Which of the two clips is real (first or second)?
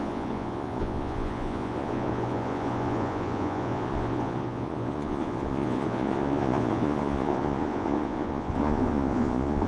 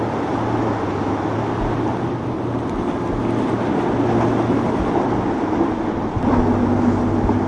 second